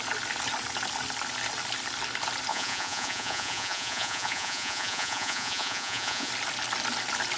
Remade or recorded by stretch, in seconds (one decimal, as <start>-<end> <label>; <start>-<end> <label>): 0.0-2.5 recorded; 2.5-6.3 remade; 6.3-7.4 recorded